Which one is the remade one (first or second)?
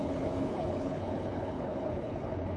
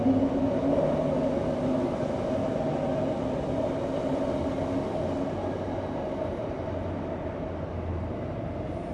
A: first